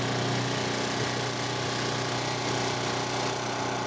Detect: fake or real real